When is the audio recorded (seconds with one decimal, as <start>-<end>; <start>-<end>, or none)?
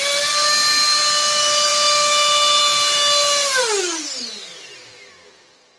0.0-3.4